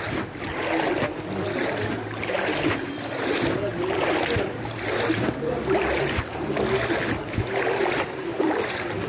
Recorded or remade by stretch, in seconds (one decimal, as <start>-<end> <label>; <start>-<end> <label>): 0.0-9.1 recorded